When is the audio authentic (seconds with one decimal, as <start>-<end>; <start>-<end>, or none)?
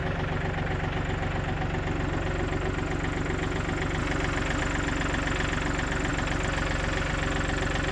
0.0-7.9